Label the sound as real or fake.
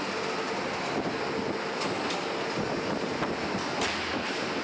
real